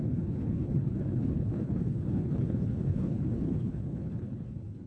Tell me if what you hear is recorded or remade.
remade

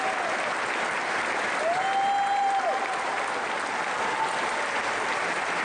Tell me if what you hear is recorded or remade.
recorded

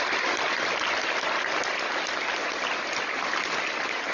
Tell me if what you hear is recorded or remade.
recorded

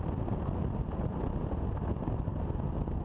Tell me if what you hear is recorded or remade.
recorded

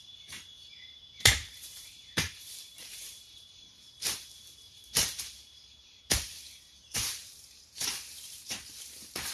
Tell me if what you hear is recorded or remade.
remade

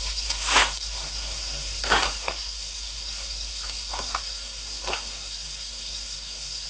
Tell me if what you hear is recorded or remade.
remade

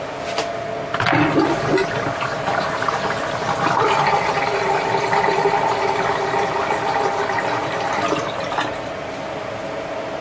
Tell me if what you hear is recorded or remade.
recorded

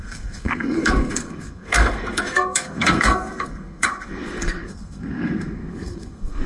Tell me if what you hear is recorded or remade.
remade